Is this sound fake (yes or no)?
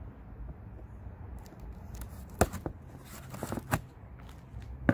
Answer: no